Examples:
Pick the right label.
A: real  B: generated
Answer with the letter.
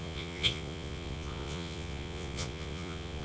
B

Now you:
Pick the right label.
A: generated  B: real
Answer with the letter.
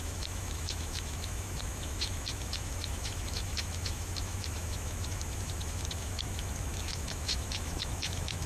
A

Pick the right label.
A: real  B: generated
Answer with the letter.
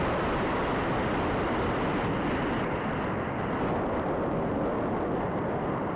A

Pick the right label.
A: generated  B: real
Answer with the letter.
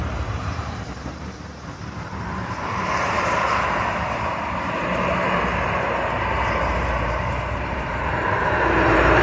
A